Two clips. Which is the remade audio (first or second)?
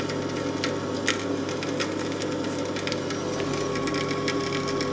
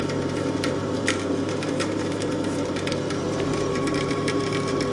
second